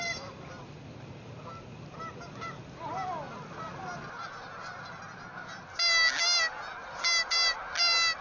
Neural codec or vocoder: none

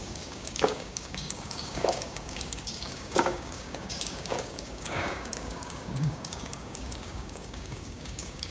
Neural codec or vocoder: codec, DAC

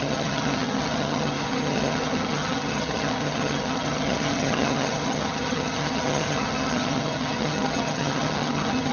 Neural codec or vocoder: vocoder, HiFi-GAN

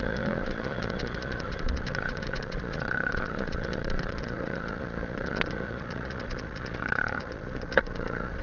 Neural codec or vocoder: vocoder, Vocos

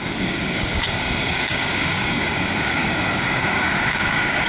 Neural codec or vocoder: codec, DAC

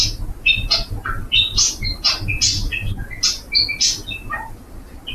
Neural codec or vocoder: none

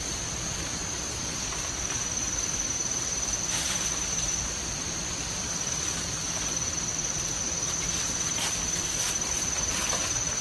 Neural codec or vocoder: vocoder, BigVGAN v2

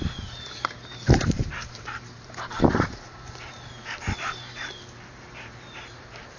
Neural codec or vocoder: vocoder, BigVGAN v2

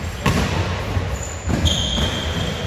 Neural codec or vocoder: vocoder, BigVGAN v2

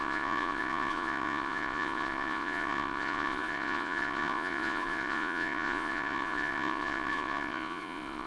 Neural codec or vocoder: vocoder, Vocos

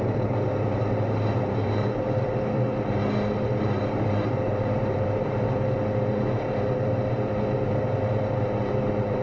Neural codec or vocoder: vocoder, BigVGAN v2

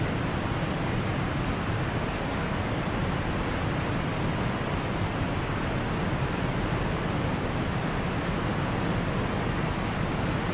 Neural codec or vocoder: none